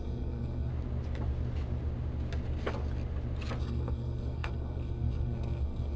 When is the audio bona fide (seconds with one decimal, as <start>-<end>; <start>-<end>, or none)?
0.7-3.6